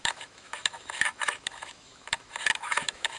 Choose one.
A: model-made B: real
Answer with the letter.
A